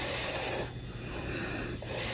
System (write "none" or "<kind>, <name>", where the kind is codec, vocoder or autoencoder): vocoder, BigVGAN v2